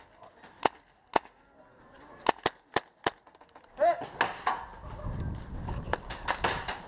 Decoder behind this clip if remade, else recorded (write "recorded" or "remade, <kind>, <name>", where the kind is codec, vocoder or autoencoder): recorded